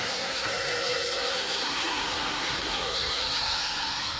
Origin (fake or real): fake